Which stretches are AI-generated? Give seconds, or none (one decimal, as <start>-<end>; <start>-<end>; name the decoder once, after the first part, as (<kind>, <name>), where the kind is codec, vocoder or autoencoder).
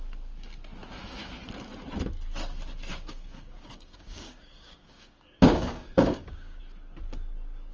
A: 2.9-6.6 (codec, DAC)